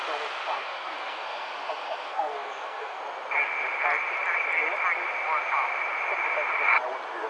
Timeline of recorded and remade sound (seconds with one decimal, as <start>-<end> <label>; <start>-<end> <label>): 0.0-0.5 recorded; 0.5-3.0 remade; 3.0-7.3 recorded